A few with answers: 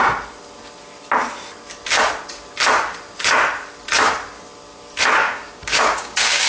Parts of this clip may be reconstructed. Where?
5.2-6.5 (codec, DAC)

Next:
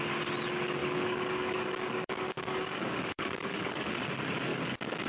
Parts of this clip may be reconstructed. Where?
0.8-3.9 (codec, DAC); 4.5-5.1

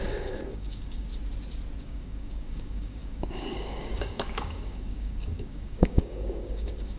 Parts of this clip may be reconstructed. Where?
0.0-1.1 (codec, DAC); 1.8-7.0

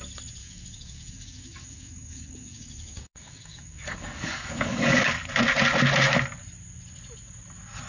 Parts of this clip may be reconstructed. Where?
0.4-5.1 (codec, DAC)

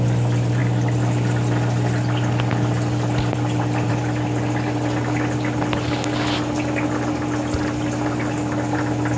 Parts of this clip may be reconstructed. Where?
none

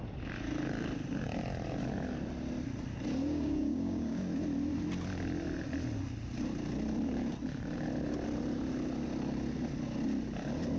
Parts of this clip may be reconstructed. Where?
3.2-4.2 (codec, DAC)

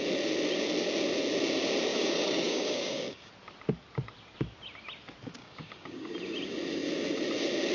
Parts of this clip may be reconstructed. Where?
1.9-3.3 (codec, DAC); 5.4-6.1

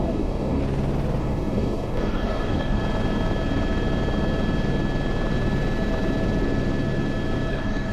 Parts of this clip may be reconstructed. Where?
0.0-0.6 (codec, DAC); 1.2-2.8; 7.5-7.9